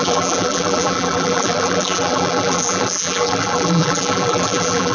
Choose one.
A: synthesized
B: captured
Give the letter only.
A